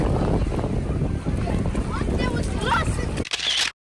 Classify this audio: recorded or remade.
recorded